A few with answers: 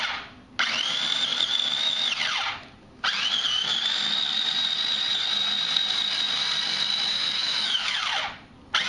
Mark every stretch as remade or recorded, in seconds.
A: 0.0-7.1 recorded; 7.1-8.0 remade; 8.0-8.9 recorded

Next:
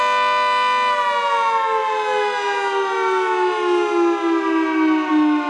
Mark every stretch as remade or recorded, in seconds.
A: 0.0-5.5 recorded

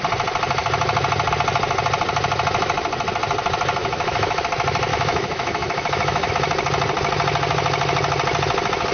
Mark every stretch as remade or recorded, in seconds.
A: 0.0-3.8 recorded; 3.8-4.4 remade; 4.4-4.9 recorded; 4.9-6.3 remade; 6.3-8.9 recorded

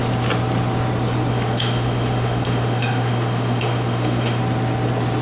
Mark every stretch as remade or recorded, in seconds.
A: 0.0-1.3 recorded; 1.3-4.4 remade; 4.4-5.2 recorded